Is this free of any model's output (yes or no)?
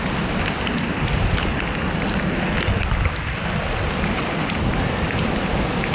yes